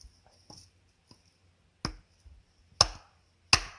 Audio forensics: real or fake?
real